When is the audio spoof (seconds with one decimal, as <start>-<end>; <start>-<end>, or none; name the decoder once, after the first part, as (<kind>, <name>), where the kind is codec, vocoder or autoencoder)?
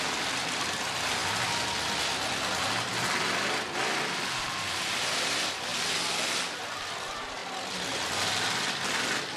0.0-1.2 (vocoder, BigVGAN v2); 3.8-5.7; 6.3-7.4; 7.9-9.4